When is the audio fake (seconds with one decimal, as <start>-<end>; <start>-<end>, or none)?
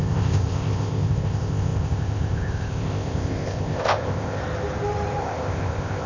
0.0-4.4; 5.2-6.1